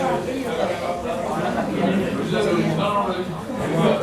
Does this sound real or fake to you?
real